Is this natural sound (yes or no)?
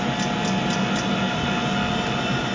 yes